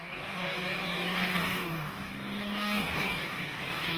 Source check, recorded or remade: remade